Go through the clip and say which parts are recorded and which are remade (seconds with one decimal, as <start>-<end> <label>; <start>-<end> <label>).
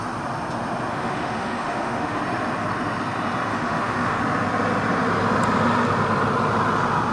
0.0-0.9 recorded; 0.9-2.2 remade; 2.2-3.5 recorded; 3.5-4.2 remade; 4.2-7.1 recorded